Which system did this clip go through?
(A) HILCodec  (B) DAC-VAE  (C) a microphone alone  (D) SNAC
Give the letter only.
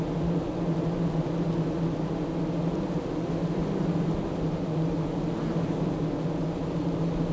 C